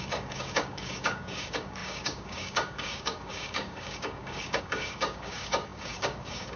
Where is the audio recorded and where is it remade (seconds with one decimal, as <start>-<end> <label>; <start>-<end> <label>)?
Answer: 0.0-6.6 remade